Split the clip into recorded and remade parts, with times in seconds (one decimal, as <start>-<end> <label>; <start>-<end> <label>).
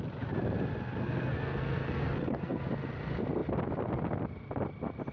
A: 0.0-1.0 recorded; 1.0-2.7 remade; 2.7-5.1 recorded